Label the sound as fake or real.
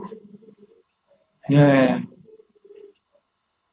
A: fake